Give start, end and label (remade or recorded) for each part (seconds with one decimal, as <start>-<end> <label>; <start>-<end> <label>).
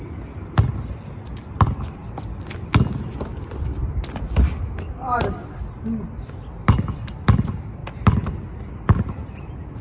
0.0-9.8 recorded